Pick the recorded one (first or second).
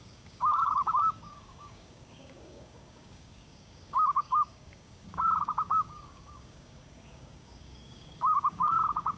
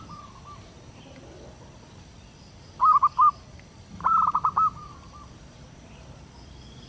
second